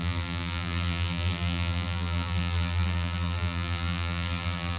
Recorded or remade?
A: remade